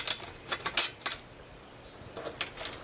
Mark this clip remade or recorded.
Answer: recorded